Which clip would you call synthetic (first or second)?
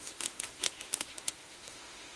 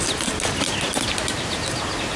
first